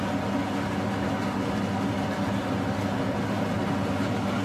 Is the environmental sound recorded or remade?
recorded